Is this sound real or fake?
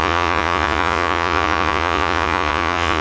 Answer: fake